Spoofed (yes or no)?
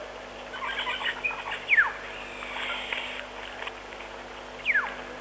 no